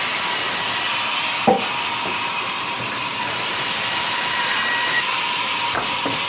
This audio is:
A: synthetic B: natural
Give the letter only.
B